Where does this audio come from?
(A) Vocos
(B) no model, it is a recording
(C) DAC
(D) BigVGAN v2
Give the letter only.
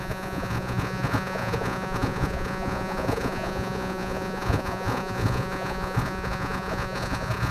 A